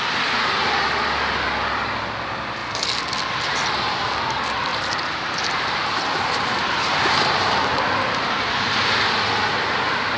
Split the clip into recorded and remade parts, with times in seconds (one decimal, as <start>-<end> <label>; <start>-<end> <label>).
0.0-4.7 recorded; 4.7-9.2 remade; 9.2-10.2 recorded